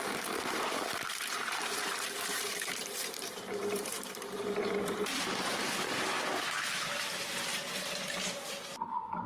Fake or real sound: fake